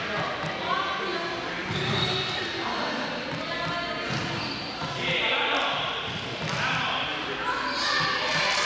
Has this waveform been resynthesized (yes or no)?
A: no